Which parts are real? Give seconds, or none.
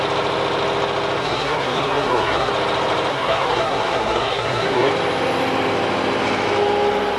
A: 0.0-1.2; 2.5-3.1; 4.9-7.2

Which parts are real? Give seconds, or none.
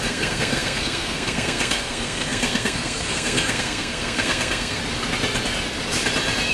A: 4.8-6.5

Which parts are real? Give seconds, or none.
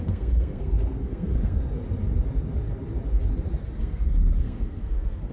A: 1.8-3.8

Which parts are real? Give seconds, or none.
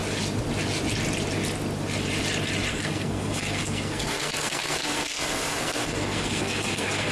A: 0.0-2.7